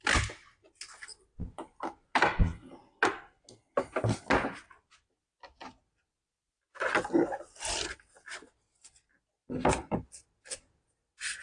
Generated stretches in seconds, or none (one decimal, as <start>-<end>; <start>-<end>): none